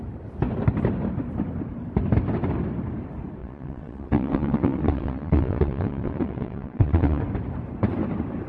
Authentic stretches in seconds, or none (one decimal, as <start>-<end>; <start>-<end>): 0.0-3.4; 7.2-8.5